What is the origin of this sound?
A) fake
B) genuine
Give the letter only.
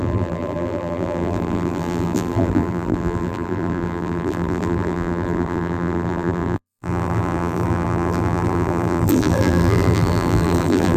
A